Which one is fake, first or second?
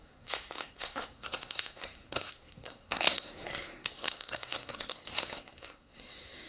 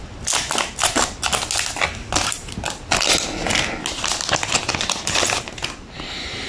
first